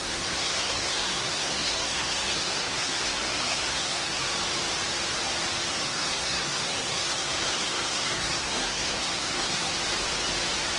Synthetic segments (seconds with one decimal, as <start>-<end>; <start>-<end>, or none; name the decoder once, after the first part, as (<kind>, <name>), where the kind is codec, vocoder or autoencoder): 0.0-4.2 (codec, SNAC); 5.7-9.7